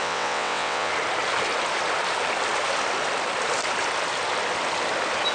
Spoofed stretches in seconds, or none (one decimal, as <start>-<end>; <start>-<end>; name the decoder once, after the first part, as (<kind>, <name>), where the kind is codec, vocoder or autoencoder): 0.0-0.9 (vocoder, WaveNeXt)